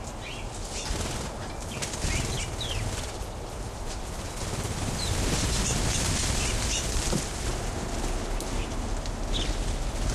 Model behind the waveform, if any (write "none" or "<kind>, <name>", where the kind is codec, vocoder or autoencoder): none